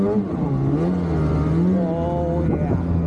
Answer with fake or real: real